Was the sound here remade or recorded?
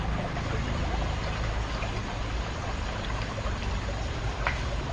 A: recorded